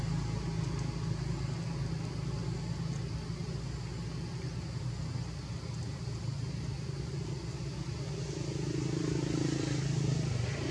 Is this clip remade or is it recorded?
recorded